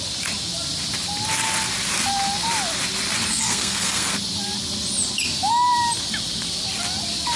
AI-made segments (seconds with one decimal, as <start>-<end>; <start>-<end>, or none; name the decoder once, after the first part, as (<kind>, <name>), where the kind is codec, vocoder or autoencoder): 3.3-4.1 (codec, SNAC)